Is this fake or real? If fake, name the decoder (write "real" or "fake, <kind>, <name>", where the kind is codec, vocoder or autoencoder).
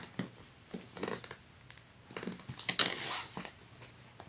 real